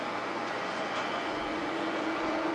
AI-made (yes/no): yes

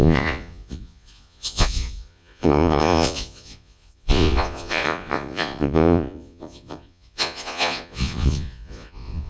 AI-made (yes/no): yes